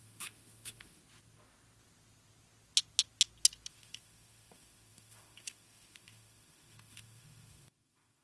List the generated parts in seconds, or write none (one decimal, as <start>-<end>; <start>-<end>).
0.0-1.0; 3.7-8.2